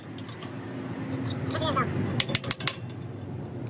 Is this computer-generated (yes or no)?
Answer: no